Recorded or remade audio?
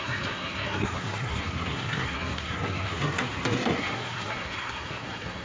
remade